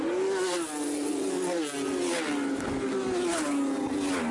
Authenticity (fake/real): real